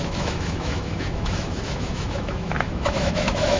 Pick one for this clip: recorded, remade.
remade